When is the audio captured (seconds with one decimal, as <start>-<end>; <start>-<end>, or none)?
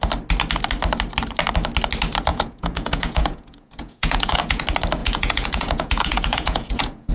0.0-2.3; 4.6-5.0